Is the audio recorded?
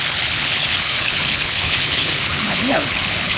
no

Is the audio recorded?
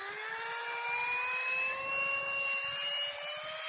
yes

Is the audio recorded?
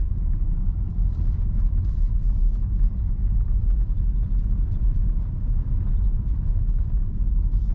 no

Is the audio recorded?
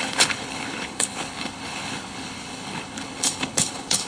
no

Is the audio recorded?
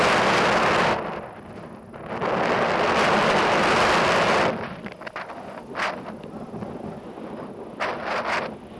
yes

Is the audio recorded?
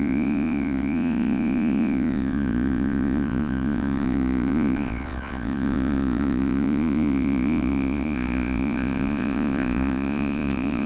no